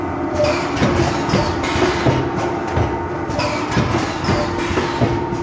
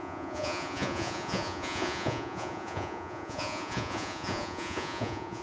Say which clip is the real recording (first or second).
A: first